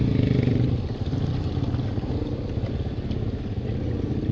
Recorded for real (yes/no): yes